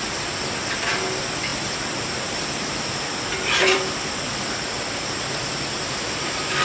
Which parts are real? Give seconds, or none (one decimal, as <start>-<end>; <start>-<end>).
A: 0.0-6.6